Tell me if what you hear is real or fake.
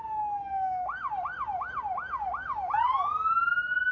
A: real